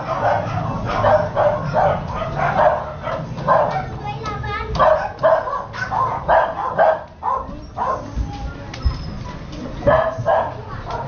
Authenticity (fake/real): real